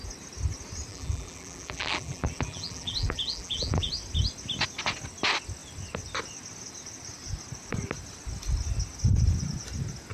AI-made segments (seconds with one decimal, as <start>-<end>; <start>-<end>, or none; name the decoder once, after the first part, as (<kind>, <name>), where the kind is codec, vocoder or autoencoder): 0.9-3.9 (vocoder, BigVGAN v2)